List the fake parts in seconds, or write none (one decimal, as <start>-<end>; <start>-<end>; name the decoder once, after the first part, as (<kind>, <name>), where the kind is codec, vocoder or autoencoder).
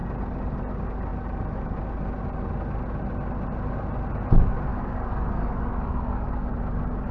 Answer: 4.7-6.6 (codec, DAC)